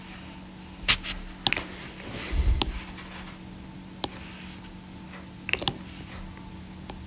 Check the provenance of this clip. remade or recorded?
recorded